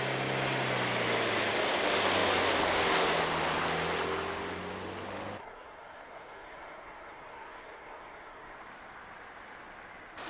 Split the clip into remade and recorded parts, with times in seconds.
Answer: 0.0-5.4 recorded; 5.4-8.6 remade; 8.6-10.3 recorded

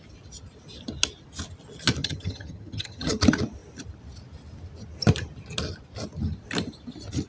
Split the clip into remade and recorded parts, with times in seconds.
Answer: 0.0-2.0 recorded; 2.0-3.2 remade; 3.2-7.3 recorded

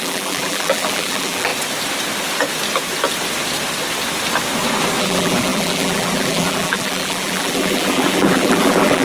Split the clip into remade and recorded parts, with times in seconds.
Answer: 0.0-1.5 remade; 1.5-5.0 recorded; 5.0-9.0 remade

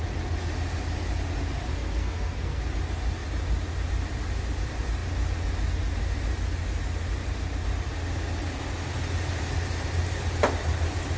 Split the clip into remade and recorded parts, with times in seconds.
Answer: 0.0-1.7 recorded; 1.7-2.6 remade; 2.6-11.2 recorded

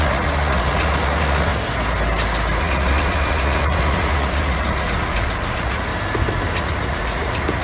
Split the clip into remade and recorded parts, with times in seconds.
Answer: 0.0-1.5 remade; 1.5-2.6 recorded; 2.6-5.9 remade; 5.9-6.6 recorded; 6.6-7.6 remade

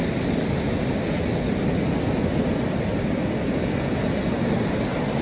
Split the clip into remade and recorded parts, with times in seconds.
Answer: 0.0-5.2 recorded